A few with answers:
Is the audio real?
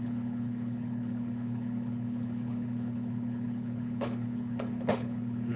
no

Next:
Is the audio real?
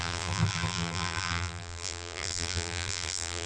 no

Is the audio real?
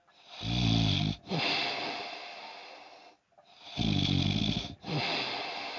yes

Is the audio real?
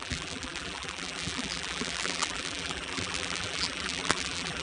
no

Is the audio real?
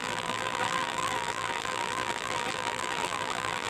no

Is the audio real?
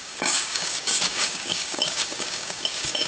no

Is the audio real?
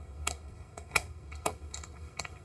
no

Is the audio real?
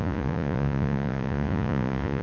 no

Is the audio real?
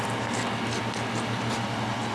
yes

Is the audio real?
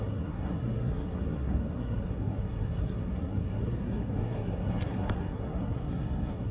no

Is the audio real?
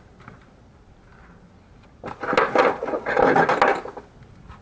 yes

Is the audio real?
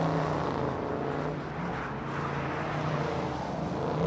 yes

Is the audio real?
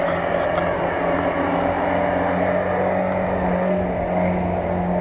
yes